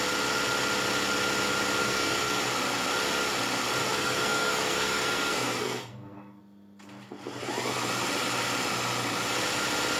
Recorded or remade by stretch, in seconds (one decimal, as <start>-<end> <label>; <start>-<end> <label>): 0.0-1.8 recorded; 1.8-2.4 remade; 2.4-3.8 recorded; 3.8-6.4 remade; 6.4-10.0 recorded